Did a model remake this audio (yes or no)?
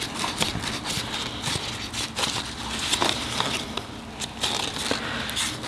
no